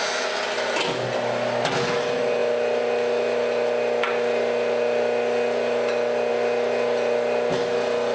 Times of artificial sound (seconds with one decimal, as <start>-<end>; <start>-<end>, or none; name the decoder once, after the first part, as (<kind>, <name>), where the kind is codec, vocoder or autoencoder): none